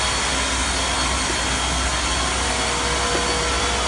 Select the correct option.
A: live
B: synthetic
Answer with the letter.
A